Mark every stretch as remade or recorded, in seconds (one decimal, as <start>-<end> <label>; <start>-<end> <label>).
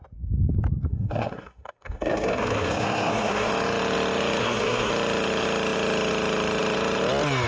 0.0-0.9 recorded; 0.9-3.5 remade; 3.5-4.4 recorded; 4.4-4.9 remade; 4.9-7.5 recorded